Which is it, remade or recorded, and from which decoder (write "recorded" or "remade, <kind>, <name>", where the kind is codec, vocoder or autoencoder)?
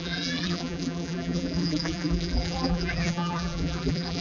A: remade, vocoder, BigVGAN v2